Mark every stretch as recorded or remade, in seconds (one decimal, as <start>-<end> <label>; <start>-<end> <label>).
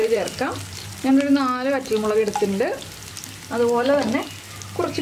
0.0-1.1 remade; 1.1-5.0 recorded